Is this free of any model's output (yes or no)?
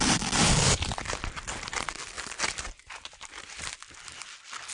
no